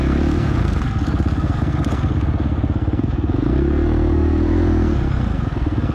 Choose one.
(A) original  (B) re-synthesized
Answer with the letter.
B